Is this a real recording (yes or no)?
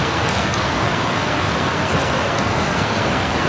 no